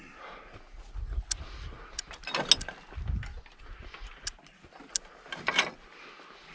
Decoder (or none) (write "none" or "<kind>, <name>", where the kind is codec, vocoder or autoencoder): none